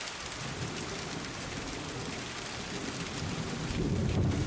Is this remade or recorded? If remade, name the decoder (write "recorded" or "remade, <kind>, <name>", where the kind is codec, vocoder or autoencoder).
recorded